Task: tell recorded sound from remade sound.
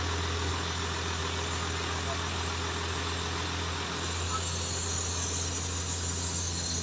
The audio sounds recorded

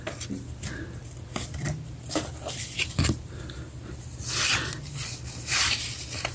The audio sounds recorded